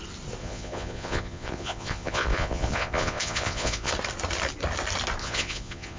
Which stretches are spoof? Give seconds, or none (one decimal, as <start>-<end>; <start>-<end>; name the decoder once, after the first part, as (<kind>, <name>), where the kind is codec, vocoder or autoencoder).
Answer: 0.4-3.9 (vocoder, Vocos); 5.2-6.0

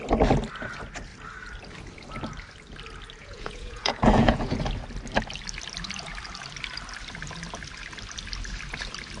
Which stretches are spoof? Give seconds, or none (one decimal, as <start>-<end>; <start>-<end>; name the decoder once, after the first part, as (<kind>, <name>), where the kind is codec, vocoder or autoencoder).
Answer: 3.2-4.6 (vocoder, Vocos)

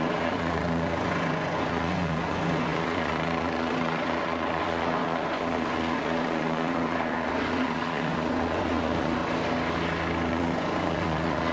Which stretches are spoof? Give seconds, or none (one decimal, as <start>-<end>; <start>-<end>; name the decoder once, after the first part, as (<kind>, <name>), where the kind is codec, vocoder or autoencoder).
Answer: 0.0-9.2 (vocoder, Vocos); 10.3-11.5

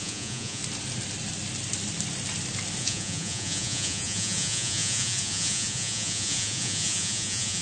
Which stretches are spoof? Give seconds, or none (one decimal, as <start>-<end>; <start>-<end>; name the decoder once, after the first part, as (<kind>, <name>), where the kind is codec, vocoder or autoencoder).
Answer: 0.0-0.6 (vocoder, Vocos); 2.8-7.6

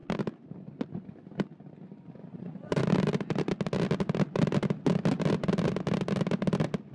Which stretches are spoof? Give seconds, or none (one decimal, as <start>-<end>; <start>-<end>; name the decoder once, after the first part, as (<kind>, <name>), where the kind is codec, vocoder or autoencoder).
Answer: 2.2-2.8 (vocoder, Vocos)

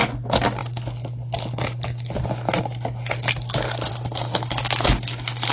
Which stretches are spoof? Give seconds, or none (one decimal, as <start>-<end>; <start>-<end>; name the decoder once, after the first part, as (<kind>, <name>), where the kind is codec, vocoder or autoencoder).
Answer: none

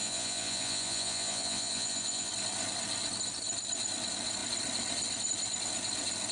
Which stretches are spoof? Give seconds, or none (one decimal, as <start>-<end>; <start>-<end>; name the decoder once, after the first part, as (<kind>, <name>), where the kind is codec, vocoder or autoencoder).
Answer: 0.0-2.3 (vocoder, Vocos)

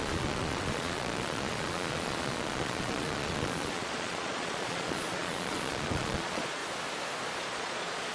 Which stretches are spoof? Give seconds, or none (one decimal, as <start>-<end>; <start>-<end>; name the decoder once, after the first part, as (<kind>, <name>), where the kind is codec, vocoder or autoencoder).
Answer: 0.0-6.6 (vocoder, Vocos); 7.4-8.1